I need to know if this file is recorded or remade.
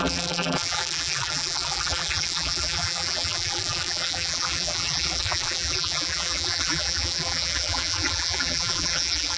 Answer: remade